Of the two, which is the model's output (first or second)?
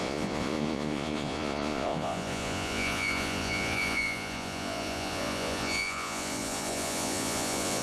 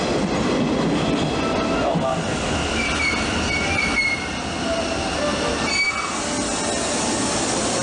first